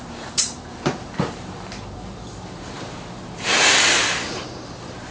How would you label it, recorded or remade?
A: remade